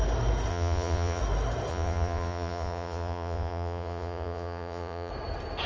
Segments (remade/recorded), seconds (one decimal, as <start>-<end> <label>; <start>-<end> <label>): 0.0-0.5 recorded; 0.5-1.2 remade; 1.2-1.7 recorded; 1.7-5.1 remade; 5.1-5.7 recorded